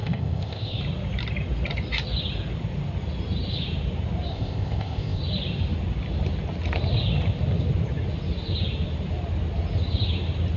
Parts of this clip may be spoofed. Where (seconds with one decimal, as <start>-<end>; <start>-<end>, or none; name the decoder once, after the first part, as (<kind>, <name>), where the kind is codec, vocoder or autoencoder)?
0.0-0.8 (codec, ZipCodec); 4.3-5.2